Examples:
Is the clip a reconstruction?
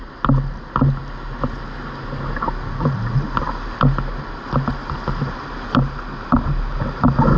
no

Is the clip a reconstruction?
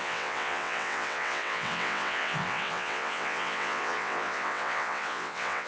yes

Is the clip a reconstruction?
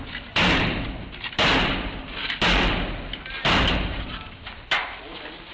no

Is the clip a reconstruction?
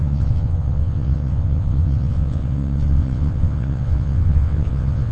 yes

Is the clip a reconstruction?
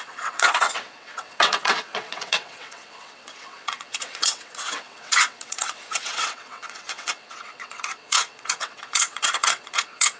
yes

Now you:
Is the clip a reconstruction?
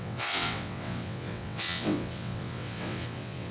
yes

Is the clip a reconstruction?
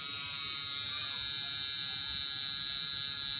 no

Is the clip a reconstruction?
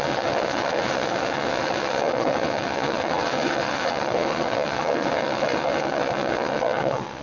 yes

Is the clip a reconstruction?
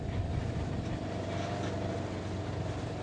no